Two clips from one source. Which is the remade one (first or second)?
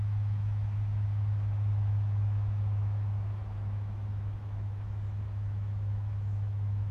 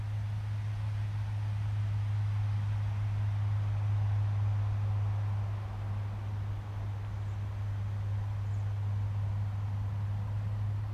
first